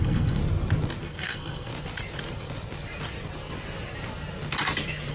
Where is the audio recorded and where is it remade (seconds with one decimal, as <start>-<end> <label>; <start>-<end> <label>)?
0.0-0.4 remade; 0.4-1.0 recorded; 1.0-1.7 remade; 1.7-5.1 recorded